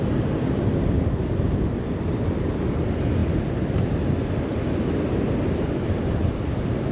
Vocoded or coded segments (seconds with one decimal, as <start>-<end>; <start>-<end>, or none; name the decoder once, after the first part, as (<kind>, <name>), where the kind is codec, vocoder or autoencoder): none